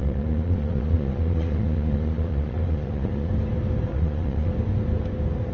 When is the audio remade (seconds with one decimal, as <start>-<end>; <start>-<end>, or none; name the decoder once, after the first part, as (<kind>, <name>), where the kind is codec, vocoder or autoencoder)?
0.0-3.3 (vocoder, Vocos); 3.9-4.5

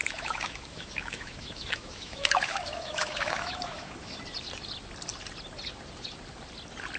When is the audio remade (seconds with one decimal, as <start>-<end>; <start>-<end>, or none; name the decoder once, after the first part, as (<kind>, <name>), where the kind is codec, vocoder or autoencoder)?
0.0-4.2 (autoencoder, DAC-VAE)